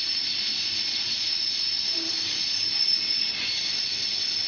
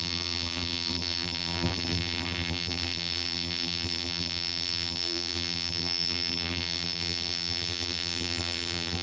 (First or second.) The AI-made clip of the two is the second